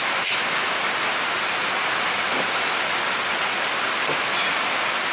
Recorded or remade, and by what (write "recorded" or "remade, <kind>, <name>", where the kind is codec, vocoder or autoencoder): recorded